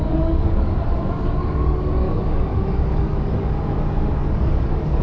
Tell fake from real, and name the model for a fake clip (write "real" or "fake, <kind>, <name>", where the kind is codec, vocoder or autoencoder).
fake, codec, DAC